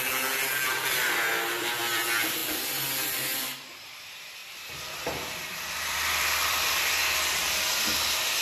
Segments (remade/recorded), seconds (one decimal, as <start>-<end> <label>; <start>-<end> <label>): 0.0-4.4 recorded; 4.4-6.9 remade; 6.9-8.4 recorded